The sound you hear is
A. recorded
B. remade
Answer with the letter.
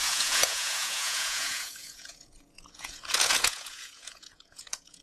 B